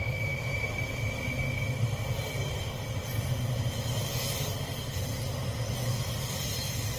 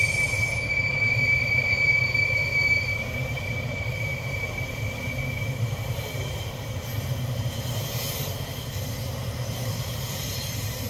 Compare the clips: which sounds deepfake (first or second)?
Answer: second